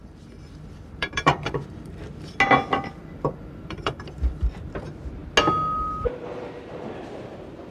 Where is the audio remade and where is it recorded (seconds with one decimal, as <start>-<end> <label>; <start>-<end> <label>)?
0.0-1.9 remade; 1.9-3.0 recorded; 3.0-4.4 remade; 4.4-7.7 recorded